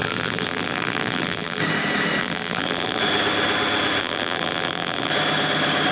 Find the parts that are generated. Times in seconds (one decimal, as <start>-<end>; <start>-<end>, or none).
0.0-1.6; 2.2-3.0; 4.0-5.1